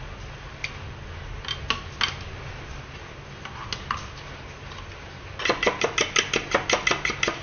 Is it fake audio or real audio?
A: real